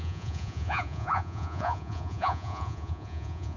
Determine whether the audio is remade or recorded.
remade